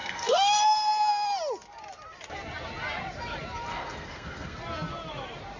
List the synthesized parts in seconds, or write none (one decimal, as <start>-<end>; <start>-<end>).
0.0-0.6; 3.7-4.6